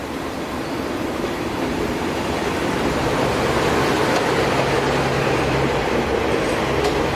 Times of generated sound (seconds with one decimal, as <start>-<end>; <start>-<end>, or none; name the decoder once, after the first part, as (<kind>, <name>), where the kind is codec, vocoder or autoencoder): 0.0-4.0 (vocoder, BigVGAN v2); 5.1-6.0